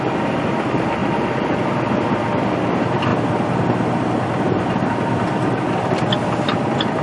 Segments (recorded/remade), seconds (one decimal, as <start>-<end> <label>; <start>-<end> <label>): 0.0-1.0 recorded; 1.0-1.6 remade; 1.6-7.0 recorded